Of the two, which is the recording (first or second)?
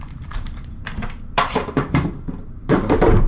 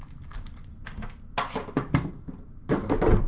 second